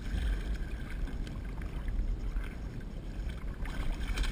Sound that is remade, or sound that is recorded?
recorded